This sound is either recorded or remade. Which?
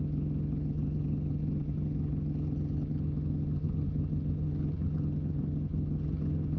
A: remade